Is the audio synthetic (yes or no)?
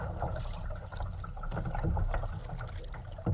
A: no